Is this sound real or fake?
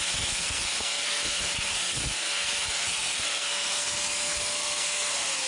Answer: fake